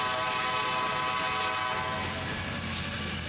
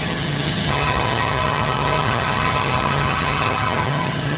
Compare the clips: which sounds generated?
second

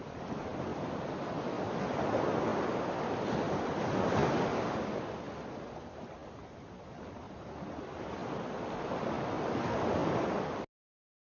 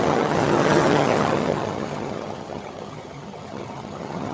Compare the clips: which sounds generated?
second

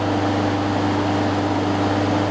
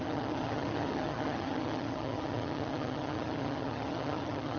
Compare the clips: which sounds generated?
second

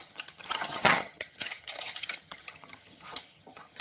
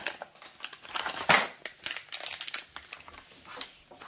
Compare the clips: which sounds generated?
first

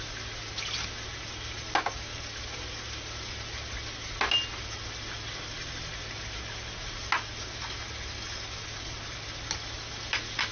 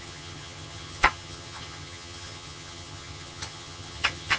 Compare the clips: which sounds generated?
second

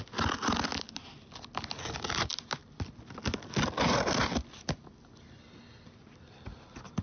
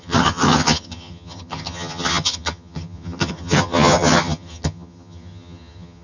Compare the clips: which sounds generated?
second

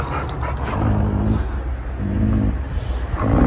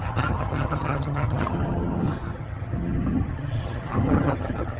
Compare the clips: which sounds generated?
second